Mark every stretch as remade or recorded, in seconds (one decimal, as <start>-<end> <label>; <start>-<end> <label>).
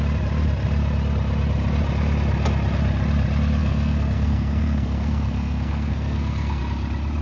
0.0-3.6 recorded; 3.6-6.6 remade; 6.6-7.2 recorded